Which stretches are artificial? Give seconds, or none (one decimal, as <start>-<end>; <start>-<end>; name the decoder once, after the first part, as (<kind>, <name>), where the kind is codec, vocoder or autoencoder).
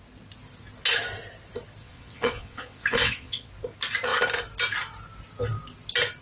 1.8-3.5 (vocoder, WaveNeXt)